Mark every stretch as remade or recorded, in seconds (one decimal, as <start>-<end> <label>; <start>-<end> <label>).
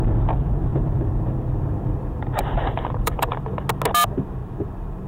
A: 0.0-0.7 recorded; 0.7-3.4 remade; 3.4-4.4 recorded; 4.4-5.1 remade